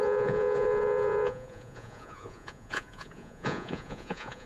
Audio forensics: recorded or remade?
remade